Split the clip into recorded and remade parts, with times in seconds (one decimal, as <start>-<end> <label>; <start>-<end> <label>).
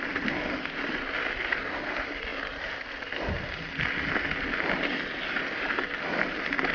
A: 0.0-6.7 recorded